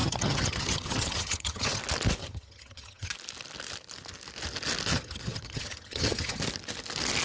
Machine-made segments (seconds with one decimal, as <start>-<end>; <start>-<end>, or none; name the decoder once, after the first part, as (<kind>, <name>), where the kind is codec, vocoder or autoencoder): 0.0-1.8 (vocoder, HiFi-GAN); 2.2-3.1; 4.9-6.4